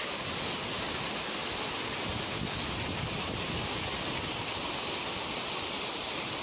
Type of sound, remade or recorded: recorded